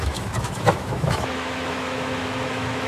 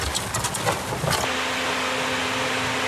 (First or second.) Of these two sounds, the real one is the second